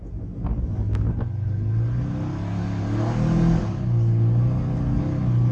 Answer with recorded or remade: recorded